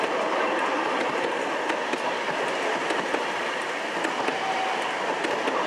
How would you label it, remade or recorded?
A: recorded